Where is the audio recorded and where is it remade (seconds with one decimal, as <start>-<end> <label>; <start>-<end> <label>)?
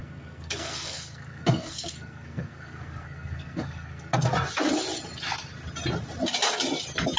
0.0-4.3 remade; 4.3-7.2 recorded